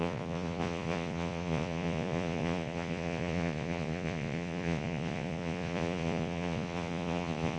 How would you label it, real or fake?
fake